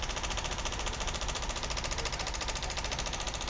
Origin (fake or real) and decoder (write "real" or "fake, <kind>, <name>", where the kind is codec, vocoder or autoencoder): fake, vocoder, BigVGAN v2